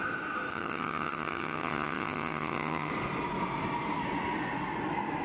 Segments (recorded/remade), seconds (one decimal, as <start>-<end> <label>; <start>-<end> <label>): 0.0-0.5 recorded; 0.5-2.9 remade; 2.9-5.2 recorded